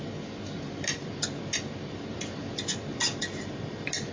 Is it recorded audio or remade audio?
remade